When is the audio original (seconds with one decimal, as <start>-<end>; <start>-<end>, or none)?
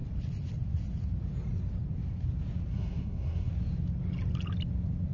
0.0-2.7; 3.5-5.1